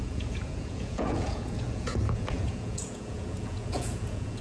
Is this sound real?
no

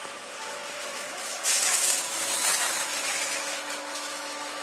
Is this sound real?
no